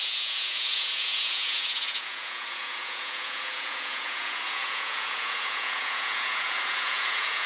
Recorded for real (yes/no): no